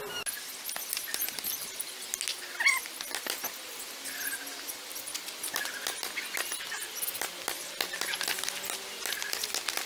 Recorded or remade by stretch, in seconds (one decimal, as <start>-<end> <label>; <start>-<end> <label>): 0.0-9.9 recorded